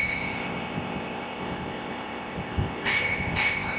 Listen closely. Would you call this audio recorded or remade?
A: remade